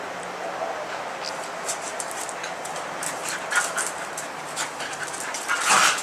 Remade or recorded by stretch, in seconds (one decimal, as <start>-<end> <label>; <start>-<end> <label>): 0.0-6.0 recorded